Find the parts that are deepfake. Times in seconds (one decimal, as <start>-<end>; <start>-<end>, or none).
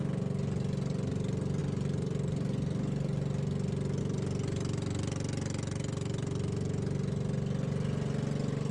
none